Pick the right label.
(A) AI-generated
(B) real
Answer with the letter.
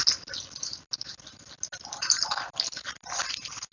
B